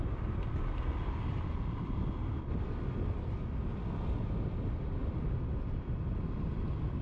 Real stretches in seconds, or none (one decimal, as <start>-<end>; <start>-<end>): 0.0-7.0